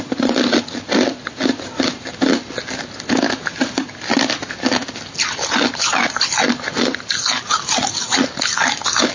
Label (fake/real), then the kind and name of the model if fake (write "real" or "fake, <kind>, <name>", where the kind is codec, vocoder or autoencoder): real